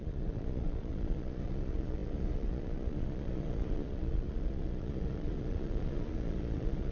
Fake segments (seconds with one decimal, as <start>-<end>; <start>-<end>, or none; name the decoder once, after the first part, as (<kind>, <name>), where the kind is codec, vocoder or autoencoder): 0.0-6.9 (vocoder, Vocos)